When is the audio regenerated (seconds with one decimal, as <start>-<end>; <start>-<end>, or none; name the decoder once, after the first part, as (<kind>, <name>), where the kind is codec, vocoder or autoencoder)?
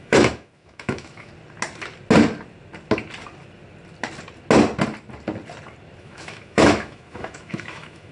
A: 0.0-1.3 (autoencoder, DAC-VAE); 6.0-8.1